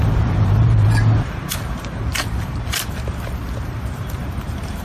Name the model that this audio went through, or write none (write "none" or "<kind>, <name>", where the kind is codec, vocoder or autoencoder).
vocoder, BigVGAN v2